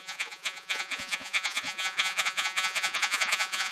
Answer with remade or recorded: remade